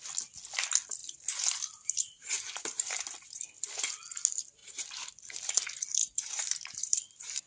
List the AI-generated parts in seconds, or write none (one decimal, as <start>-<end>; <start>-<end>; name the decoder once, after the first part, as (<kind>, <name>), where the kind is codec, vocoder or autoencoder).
1.0-3.4 (vocoder, BigVGAN v2); 4.6-5.5; 6.0-7.5